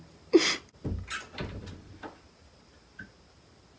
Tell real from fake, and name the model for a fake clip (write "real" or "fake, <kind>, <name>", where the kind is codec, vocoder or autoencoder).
real